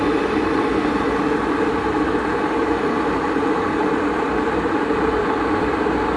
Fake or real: real